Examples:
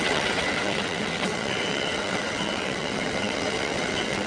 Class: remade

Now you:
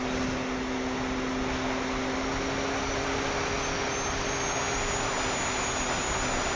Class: recorded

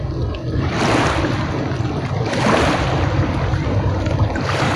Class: recorded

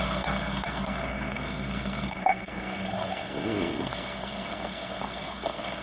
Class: remade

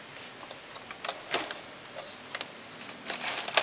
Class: recorded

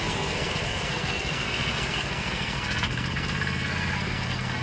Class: remade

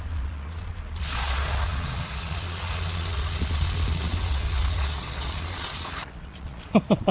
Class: remade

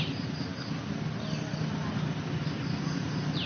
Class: recorded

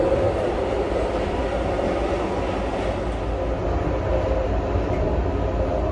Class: recorded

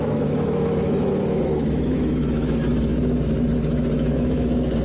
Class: remade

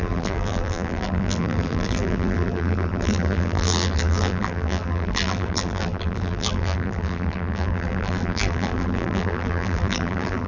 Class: remade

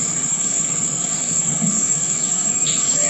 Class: remade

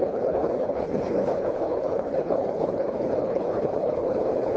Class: remade